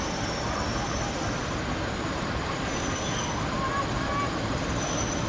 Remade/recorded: recorded